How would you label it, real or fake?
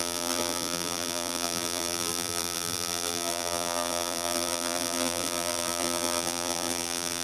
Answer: fake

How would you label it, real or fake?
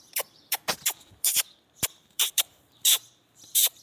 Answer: fake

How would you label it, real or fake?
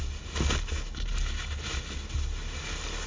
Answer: real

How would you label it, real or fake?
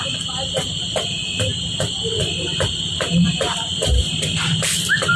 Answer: real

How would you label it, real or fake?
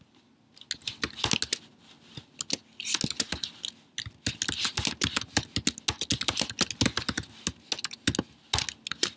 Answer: real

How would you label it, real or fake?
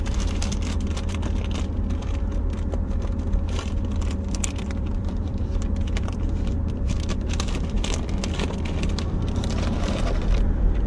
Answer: fake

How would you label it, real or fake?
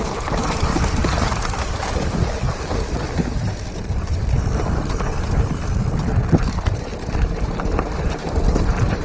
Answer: fake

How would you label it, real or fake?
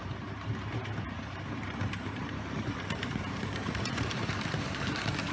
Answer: fake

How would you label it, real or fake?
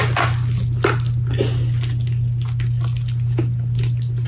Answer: real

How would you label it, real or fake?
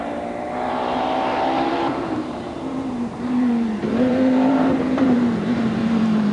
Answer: fake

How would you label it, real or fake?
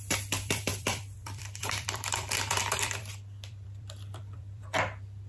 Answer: fake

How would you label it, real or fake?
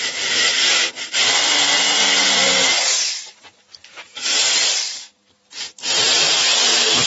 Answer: fake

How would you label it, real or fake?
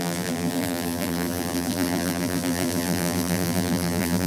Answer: fake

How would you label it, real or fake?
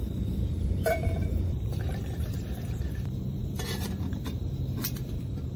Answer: fake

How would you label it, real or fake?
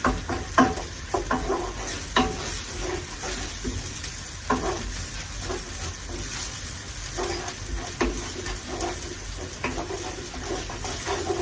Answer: real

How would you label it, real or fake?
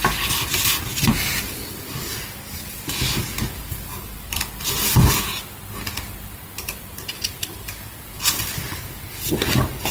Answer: real